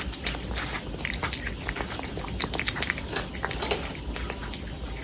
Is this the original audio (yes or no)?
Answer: yes